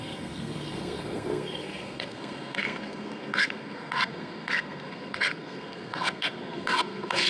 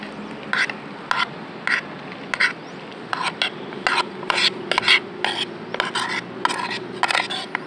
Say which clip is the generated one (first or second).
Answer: first